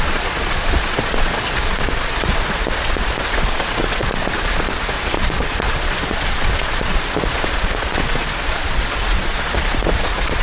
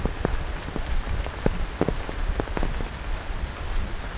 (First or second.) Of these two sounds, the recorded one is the second